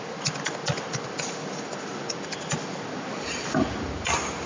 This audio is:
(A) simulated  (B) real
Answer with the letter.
B